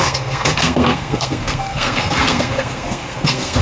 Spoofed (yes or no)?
yes